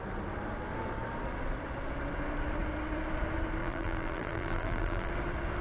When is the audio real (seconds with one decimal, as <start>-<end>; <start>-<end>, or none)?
0.0-3.6; 5.1-5.6